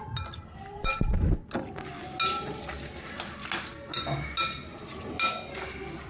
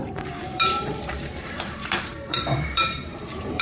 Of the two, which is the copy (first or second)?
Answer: second